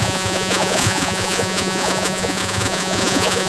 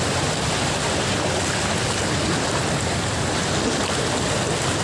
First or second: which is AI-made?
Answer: first